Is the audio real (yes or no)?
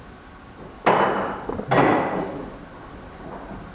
yes